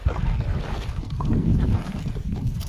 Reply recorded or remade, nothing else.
remade